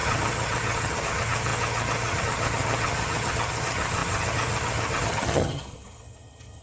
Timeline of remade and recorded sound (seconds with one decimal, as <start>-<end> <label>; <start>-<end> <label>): 0.0-6.6 remade